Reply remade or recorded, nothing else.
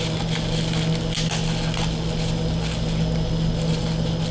recorded